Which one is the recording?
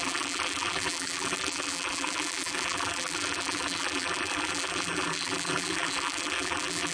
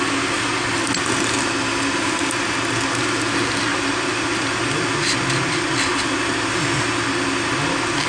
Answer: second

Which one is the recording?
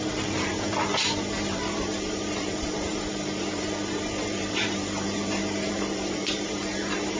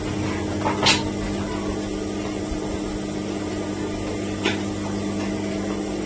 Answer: second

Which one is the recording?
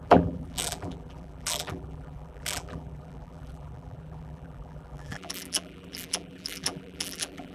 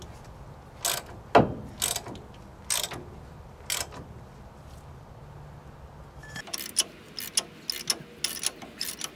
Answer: second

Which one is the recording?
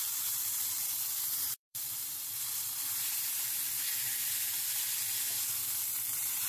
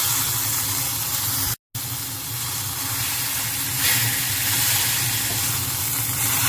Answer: second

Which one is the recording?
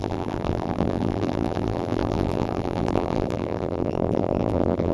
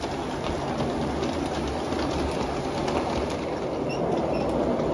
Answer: second